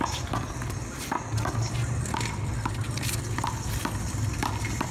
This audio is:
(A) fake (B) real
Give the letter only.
B